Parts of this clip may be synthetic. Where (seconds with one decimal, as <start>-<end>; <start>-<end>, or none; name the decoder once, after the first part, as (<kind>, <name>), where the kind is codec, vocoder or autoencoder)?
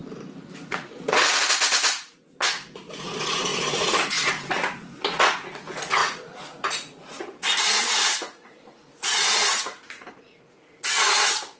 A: 0.7-11.6 (vocoder, Vocos)